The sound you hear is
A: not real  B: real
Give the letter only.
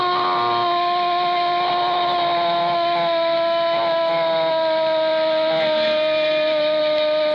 B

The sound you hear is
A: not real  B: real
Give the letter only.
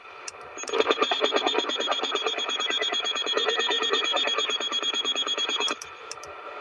A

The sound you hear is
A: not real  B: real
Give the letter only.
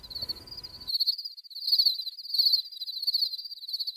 B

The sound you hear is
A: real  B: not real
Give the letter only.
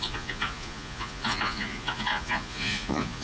B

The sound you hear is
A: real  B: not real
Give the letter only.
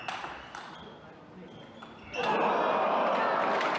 A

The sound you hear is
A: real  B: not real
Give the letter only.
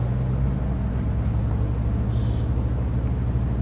A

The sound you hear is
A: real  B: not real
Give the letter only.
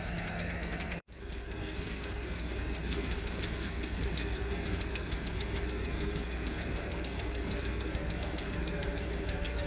B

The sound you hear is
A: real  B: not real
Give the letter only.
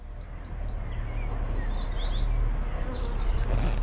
A